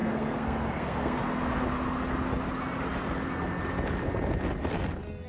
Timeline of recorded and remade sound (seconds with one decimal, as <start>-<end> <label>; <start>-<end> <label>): 0.0-1.2 remade; 1.2-5.3 recorded